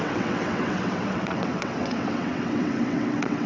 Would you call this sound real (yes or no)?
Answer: no